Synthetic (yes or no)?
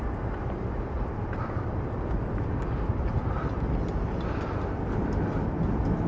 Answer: no